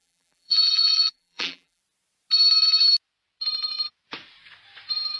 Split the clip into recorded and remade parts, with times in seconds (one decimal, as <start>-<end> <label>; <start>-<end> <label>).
0.0-1.8 remade; 1.8-5.2 recorded